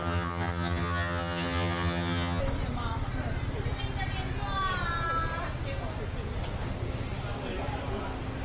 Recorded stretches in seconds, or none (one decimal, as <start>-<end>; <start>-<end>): 2.4-8.4